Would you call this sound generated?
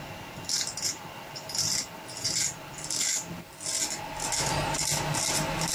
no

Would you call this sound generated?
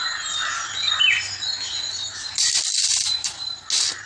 no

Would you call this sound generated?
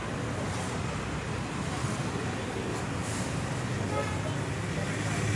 no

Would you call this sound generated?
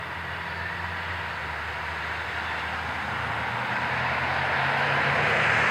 no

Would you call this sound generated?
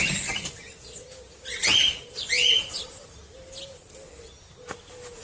no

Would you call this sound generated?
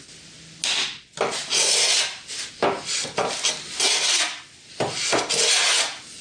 no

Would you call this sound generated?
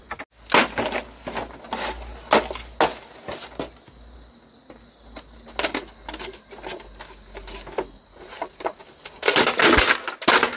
no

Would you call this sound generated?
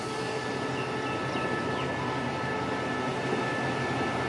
no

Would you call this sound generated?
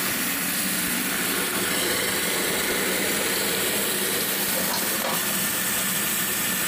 no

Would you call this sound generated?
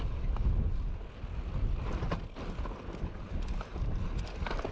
no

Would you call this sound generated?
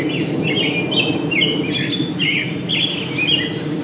no